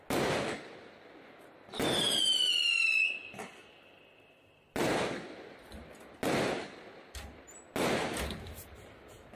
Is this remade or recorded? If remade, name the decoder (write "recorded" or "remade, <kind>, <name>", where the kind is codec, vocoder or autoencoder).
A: recorded